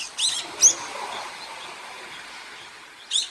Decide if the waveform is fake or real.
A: real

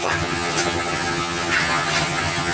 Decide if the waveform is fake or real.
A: fake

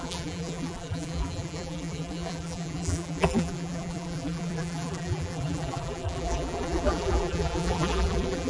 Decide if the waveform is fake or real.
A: fake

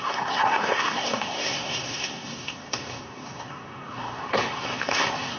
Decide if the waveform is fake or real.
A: fake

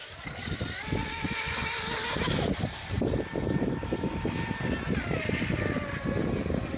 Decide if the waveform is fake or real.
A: real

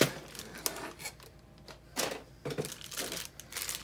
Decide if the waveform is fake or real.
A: real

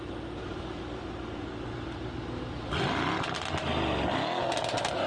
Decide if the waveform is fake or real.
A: real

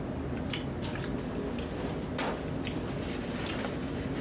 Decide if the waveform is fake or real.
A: real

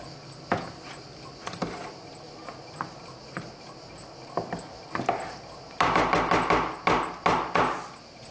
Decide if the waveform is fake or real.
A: real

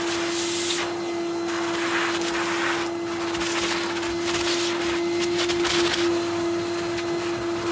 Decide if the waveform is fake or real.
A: real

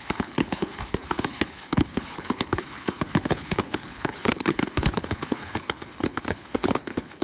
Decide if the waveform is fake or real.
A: fake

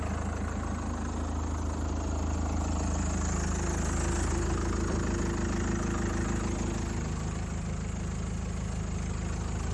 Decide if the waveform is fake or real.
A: real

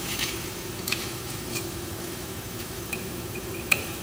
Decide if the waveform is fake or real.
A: fake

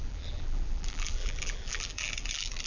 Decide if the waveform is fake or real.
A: fake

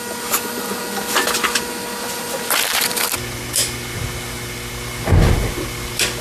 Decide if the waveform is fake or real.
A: real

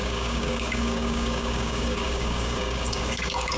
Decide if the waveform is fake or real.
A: fake